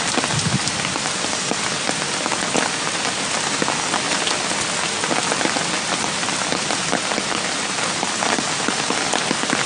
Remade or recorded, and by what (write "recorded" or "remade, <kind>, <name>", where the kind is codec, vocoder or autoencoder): recorded